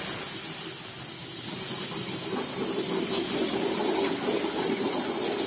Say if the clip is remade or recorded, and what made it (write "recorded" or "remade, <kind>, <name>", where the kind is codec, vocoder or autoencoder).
recorded